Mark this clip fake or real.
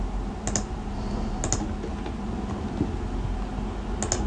real